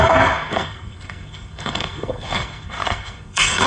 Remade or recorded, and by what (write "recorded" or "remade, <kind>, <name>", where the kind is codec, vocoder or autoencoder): remade, codec, SNAC